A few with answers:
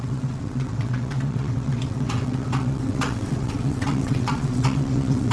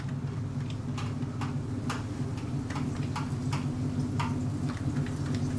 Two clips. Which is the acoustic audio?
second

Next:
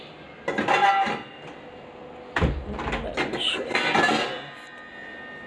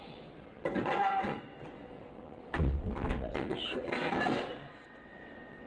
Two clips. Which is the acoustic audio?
first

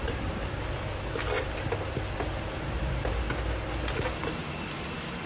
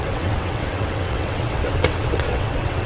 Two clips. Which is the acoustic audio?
first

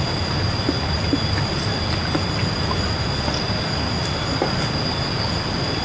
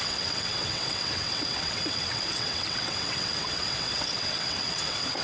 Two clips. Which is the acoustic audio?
first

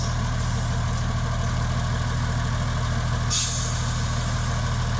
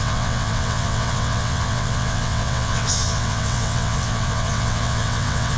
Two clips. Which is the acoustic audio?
first